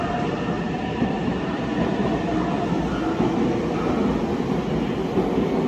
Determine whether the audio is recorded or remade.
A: recorded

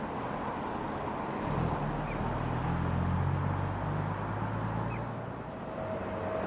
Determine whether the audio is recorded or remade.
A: recorded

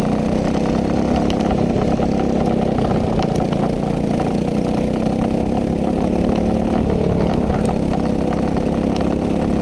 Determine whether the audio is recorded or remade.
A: recorded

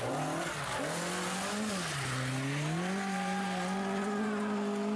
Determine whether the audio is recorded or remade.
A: recorded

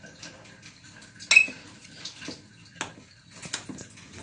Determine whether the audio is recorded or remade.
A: recorded